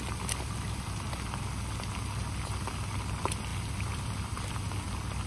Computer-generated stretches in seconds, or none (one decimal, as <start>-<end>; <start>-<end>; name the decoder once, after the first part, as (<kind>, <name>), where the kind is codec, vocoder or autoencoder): 3.5-4.5 (vocoder, BigVGAN v2)